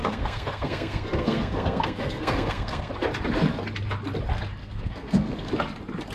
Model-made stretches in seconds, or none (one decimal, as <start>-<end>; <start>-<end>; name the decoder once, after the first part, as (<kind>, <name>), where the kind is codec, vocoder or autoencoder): 0.0-2.9 (codec, SNAC); 4.6-5.5